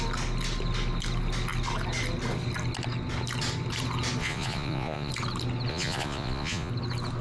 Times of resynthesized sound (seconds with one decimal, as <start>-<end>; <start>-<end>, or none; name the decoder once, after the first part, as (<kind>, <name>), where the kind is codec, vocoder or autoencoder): 4.2-5.1 (vocoder, Vocos); 5.7-6.7